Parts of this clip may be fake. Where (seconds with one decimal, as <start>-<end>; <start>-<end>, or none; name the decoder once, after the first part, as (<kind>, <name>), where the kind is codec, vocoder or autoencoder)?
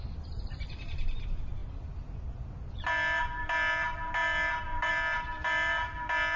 none